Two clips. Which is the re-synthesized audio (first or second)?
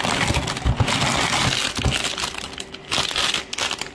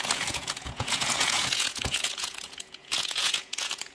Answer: second